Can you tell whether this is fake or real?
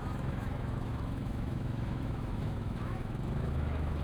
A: fake